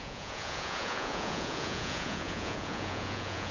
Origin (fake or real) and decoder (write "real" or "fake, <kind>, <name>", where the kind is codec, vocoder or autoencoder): fake, vocoder, Vocos